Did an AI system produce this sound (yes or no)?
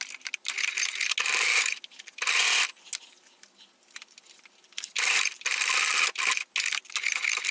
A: no